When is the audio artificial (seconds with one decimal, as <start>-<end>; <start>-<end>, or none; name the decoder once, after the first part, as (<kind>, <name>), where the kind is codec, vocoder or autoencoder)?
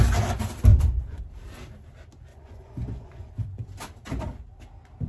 0.7-1.2 (vocoder, Vocos); 2.3-3.3